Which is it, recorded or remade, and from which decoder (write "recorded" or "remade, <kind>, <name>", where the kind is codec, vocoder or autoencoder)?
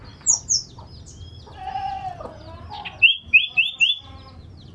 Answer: recorded